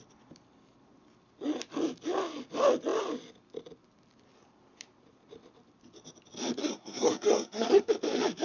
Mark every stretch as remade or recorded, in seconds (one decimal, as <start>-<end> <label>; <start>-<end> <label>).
0.0-6.6 recorded; 6.6-7.9 remade; 7.9-8.4 recorded